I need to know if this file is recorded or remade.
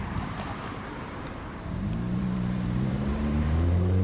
remade